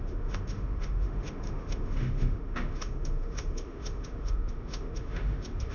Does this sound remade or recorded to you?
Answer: remade